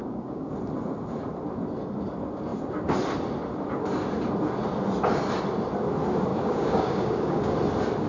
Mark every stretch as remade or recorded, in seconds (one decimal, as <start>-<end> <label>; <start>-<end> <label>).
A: 0.0-0.5 remade; 0.5-6.3 recorded; 6.3-7.4 remade; 7.4-8.1 recorded